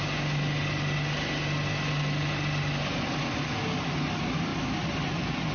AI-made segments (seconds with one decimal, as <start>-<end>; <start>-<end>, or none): none